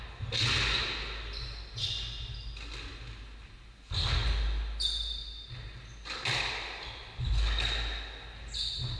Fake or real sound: real